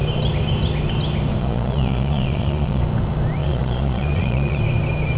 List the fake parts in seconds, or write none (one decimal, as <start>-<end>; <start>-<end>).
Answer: 1.4-2.8; 3.4-4.6